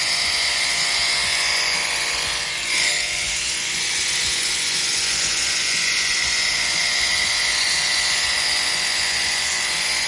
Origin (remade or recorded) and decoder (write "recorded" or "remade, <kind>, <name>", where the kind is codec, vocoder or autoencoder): remade, vocoder, Vocos